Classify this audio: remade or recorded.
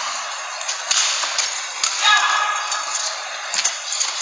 recorded